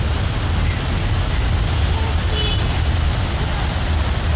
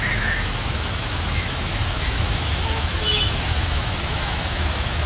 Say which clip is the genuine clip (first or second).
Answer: first